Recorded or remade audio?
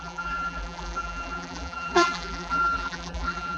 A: remade